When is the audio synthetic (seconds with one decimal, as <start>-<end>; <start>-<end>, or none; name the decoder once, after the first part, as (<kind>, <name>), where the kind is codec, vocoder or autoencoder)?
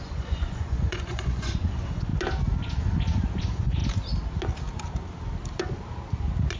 0.0-2.1 (vocoder, Vocos); 3.4-3.8